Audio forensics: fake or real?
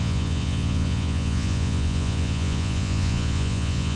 fake